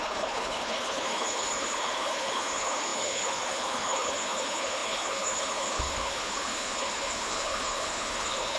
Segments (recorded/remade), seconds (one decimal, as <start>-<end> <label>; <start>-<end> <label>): 0.0-8.6 remade